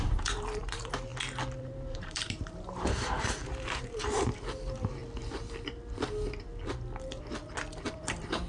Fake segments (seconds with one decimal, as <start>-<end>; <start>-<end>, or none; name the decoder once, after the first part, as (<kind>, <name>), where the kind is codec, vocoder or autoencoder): 0.0-1.1 (vocoder, BigVGAN v2); 1.6-5.0; 7.9-8.5